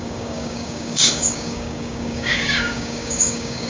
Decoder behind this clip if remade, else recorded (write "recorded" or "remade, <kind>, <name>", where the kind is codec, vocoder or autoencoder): remade, codec, DAC